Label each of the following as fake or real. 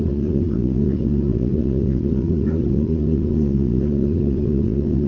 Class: fake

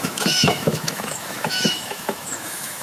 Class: fake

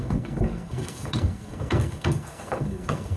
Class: fake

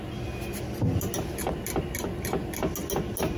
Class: real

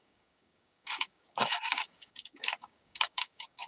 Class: fake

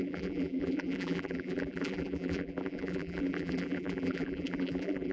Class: fake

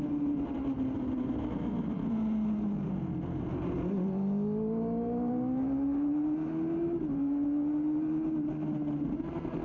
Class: real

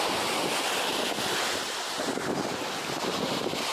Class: real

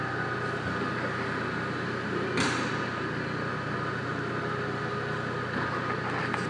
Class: real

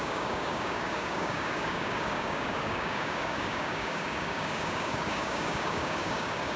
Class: fake